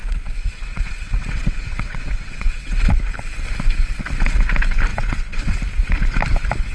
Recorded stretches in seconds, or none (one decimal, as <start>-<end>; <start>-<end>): 2.9-4.9; 5.6-6.7